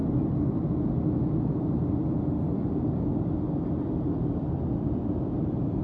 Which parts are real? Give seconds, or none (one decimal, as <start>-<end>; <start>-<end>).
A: 0.0-5.8

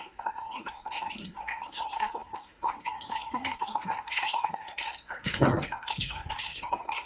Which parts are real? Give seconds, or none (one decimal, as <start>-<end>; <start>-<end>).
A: none

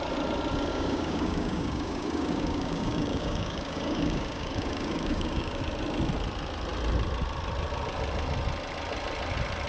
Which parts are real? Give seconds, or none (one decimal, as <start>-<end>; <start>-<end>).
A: 0.0-0.7; 5.6-9.7

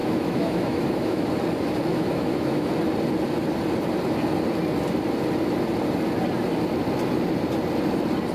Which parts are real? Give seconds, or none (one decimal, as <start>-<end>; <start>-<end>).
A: 1.3-1.9; 2.7-8.3

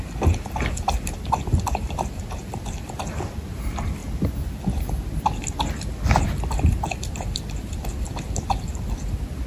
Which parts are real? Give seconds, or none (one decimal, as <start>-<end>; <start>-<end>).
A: 0.0-9.5

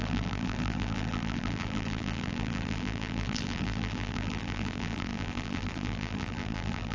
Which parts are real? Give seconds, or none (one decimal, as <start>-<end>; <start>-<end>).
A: none

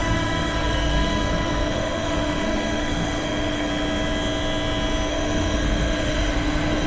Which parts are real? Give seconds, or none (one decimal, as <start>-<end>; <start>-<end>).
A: 3.7-5.1